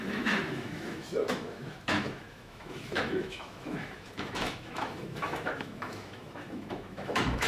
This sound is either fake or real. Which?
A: fake